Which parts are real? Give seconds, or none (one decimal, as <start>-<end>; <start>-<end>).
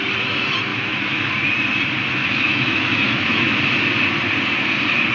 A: 0.0-0.7; 1.3-2.2; 3.6-5.1